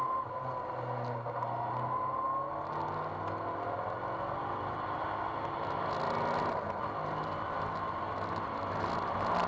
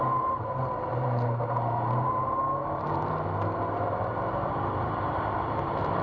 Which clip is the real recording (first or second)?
first